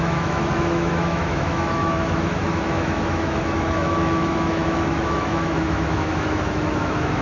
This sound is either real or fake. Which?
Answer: fake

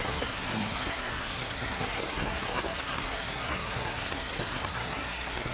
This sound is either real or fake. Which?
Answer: fake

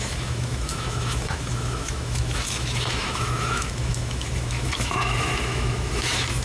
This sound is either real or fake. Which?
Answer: fake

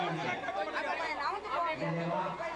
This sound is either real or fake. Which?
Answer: real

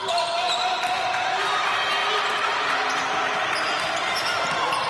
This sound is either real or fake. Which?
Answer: real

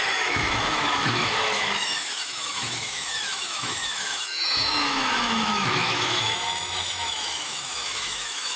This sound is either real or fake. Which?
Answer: fake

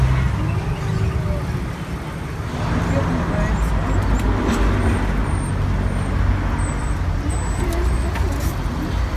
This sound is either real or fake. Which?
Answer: real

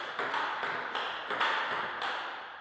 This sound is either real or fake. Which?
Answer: real